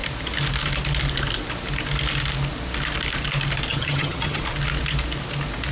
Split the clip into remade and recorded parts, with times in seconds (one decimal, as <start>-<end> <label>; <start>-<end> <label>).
0.0-3.7 recorded; 3.7-4.4 remade; 4.4-5.7 recorded